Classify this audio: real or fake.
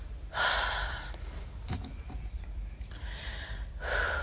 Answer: fake